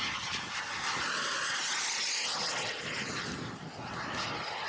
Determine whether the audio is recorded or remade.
recorded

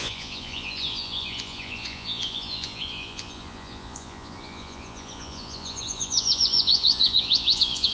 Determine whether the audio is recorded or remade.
remade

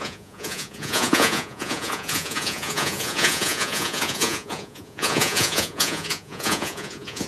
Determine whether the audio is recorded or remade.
remade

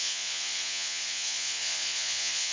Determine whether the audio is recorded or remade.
remade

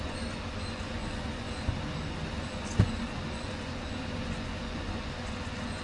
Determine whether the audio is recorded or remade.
remade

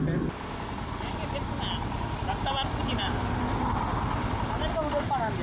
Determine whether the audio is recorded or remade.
recorded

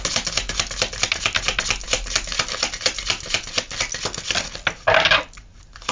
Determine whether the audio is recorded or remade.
recorded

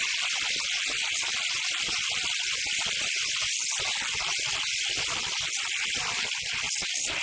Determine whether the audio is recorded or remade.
recorded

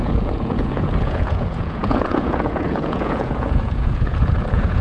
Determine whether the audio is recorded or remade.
remade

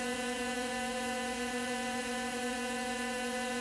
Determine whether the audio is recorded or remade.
remade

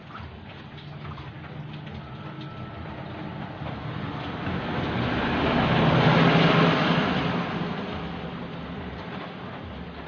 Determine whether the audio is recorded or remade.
recorded